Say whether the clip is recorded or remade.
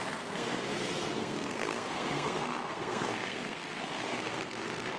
remade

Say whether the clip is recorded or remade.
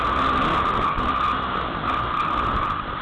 recorded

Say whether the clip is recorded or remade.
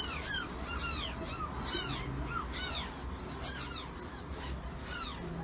recorded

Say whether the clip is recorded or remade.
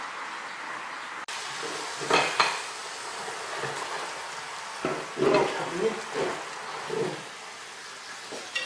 recorded